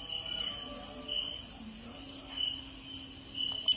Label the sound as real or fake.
real